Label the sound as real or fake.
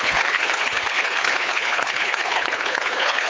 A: fake